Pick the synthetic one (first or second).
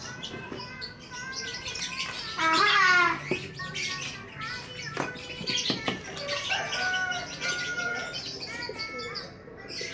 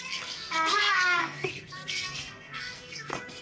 second